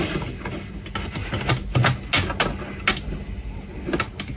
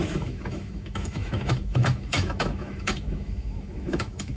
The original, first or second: first